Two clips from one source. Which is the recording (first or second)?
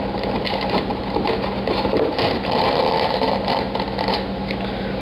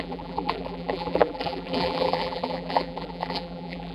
first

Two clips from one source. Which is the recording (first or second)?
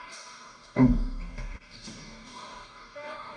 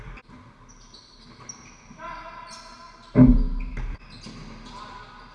second